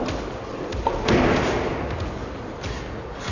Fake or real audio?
real